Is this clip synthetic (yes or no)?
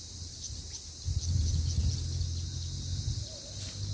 no